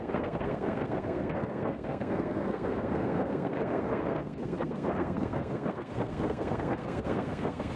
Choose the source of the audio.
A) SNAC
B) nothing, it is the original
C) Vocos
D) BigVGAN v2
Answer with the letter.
A